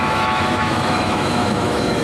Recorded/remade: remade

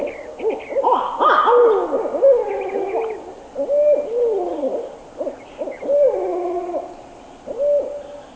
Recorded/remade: recorded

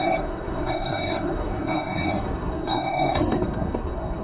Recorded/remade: remade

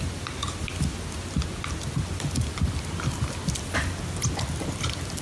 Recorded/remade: recorded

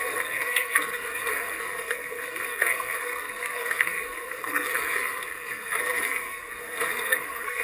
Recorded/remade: remade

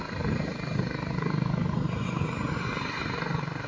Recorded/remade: recorded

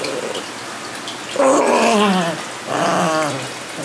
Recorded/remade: recorded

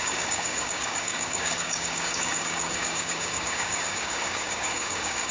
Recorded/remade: remade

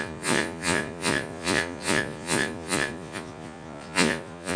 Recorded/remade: remade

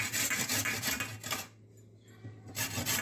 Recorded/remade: recorded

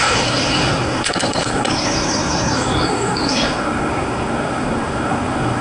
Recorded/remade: remade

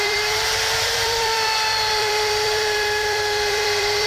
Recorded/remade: remade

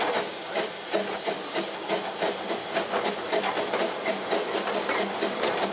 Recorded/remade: recorded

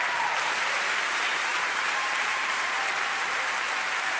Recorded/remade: remade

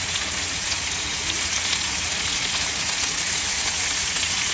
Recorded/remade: remade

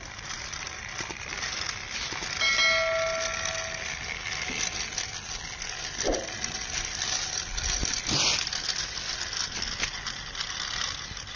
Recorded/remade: recorded